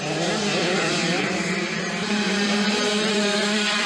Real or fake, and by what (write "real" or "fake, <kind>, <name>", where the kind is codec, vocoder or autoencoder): fake, vocoder, BigVGAN v2